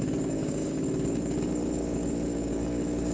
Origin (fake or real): fake